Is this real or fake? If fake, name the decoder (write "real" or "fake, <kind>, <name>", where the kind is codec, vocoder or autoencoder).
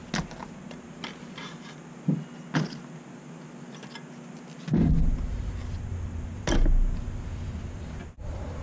real